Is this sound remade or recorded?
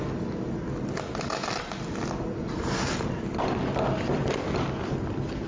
recorded